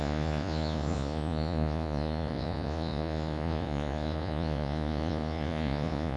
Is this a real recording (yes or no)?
no